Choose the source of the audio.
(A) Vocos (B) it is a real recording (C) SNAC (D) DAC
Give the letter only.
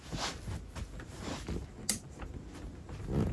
B